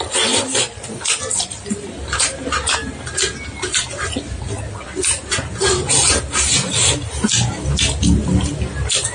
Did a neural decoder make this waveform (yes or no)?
no